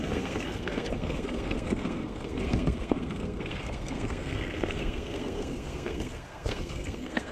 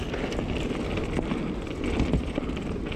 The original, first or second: second